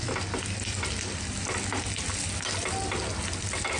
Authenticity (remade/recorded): recorded